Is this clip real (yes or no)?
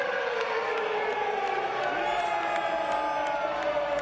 yes